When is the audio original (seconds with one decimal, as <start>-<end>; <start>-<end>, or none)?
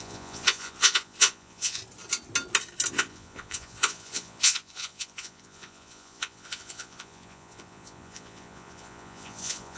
1.8-2.9